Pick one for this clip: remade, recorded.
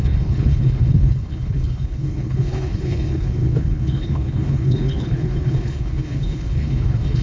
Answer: remade